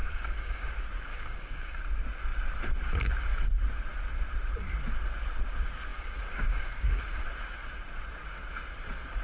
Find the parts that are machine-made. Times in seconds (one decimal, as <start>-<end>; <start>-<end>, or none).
0.0-0.7; 1.1-1.8; 5.9-7.2